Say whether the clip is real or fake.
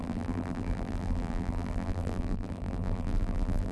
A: fake